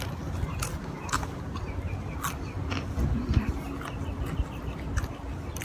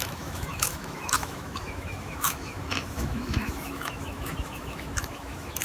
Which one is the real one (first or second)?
first